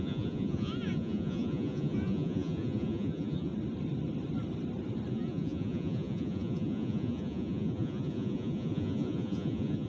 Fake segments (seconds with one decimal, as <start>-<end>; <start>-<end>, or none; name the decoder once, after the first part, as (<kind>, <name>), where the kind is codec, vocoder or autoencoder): 0.0-3.5 (vocoder, Vocos); 5.1-9.9